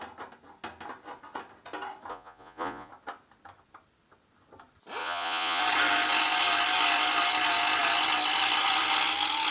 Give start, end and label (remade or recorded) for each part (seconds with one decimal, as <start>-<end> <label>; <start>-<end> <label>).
0.0-2.1 recorded; 2.1-2.9 remade; 2.9-5.0 recorded; 5.0-5.6 remade; 5.6-9.5 recorded